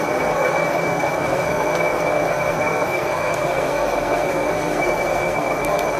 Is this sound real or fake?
fake